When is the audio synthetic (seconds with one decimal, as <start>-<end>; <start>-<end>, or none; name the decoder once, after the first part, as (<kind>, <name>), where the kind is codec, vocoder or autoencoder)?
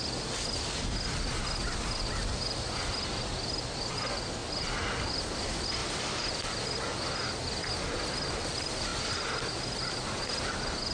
none